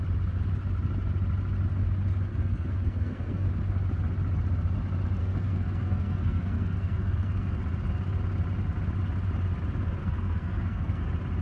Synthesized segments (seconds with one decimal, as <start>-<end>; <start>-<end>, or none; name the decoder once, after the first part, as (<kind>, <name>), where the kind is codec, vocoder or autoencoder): 2.3-3.5 (codec, SNAC); 5.2-7.6; 10.0-11.0